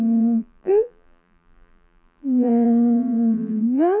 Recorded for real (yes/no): no